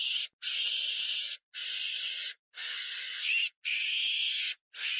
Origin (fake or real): real